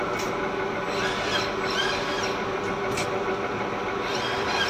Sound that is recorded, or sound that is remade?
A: recorded